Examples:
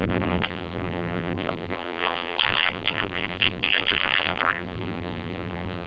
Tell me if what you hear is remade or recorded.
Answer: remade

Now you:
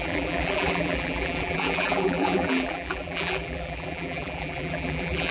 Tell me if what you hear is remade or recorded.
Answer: remade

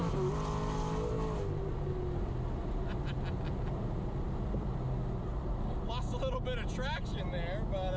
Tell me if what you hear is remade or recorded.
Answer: recorded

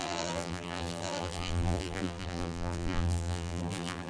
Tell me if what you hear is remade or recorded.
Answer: remade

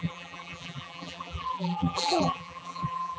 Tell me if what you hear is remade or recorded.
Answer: remade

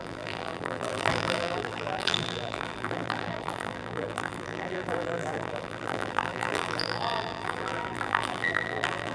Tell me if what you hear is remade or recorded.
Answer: remade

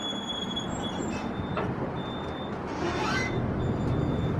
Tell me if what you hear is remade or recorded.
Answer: remade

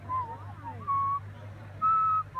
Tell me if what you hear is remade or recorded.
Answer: recorded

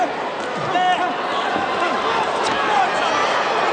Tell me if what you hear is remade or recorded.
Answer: recorded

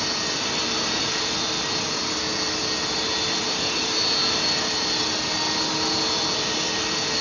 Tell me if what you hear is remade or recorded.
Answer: recorded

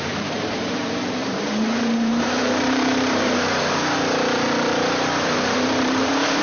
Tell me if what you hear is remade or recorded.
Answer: remade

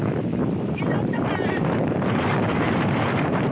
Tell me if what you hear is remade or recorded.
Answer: remade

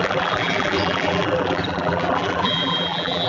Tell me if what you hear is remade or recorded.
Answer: remade